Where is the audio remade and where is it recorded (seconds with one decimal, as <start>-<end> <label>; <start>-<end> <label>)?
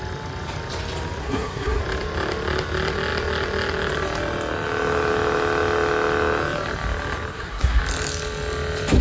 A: 0.0-1.2 recorded; 1.2-1.8 remade; 1.8-7.3 recorded; 7.3-7.8 remade; 7.8-9.0 recorded